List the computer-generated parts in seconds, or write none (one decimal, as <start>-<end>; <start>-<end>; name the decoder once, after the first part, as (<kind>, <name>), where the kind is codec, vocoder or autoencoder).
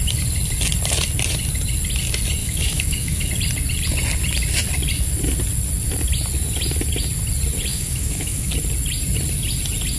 2.4-3.3 (autoencoder, DAC-VAE); 7.7-8.5